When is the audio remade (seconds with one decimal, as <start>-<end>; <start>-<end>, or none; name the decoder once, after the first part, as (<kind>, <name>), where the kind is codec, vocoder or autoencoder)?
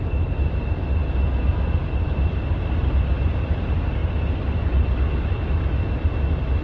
none